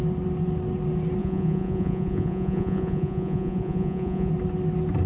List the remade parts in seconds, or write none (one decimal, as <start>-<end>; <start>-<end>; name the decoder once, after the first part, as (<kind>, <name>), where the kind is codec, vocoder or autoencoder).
1.2-4.3 (vocoder, Vocos)